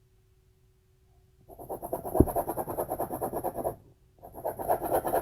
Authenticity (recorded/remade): recorded